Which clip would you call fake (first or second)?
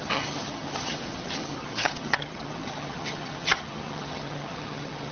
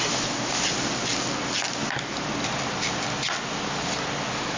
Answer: first